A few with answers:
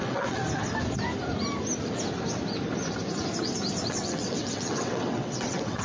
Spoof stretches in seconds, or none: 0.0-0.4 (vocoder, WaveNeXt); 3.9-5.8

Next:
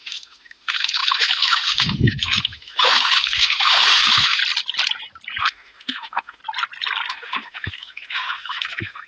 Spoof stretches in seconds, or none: 0.0-4.4 (autoencoder, DAC-VAE); 5.4-6.4; 7.1-9.1

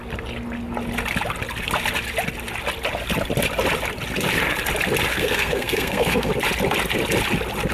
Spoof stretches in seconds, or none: 5.1-6.3 (codec, SNAC)